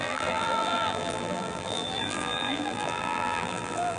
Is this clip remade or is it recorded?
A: remade